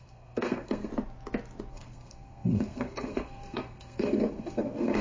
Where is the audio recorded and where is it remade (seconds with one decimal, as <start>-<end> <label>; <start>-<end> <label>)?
0.0-0.9 remade; 0.9-1.7 recorded; 1.7-5.0 remade